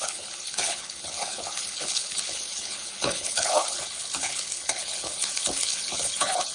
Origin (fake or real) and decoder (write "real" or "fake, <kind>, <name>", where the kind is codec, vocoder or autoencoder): fake, codec, HILCodec